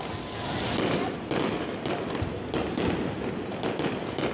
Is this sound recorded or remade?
recorded